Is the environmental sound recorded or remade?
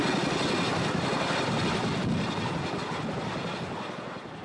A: recorded